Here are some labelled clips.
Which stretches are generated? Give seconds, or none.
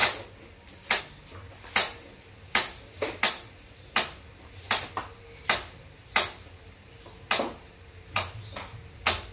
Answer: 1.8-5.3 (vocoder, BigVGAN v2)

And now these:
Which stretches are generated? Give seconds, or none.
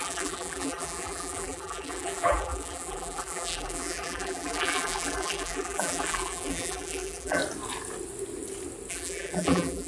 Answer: 0.0-7.4 (vocoder, BigVGAN v2); 8.9-9.9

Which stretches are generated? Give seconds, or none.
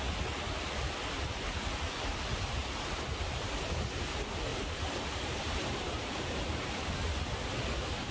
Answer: 2.6-3.5 (vocoder, BigVGAN v2); 4.5-7.2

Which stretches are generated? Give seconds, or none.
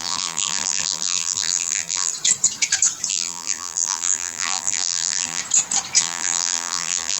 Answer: 0.0-2.1 (vocoder, BigVGAN v2); 3.1-5.4; 6.0-7.2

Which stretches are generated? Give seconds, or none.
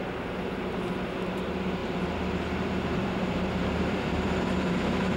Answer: 1.8-5.2 (vocoder, BigVGAN v2)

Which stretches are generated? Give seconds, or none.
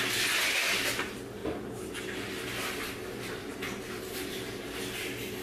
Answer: 3.4-4.6 (vocoder, BigVGAN v2)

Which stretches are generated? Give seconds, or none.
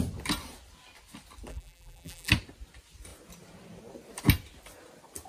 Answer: 1.5-2.3 (vocoder, BigVGAN v2)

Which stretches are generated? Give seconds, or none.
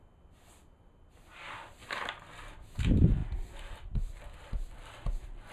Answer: 3.2-5.5 (vocoder, BigVGAN v2)